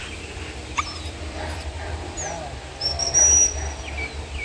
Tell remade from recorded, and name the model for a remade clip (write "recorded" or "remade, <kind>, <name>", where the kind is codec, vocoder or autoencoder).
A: recorded